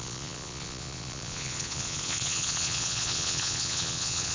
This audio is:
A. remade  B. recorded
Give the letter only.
A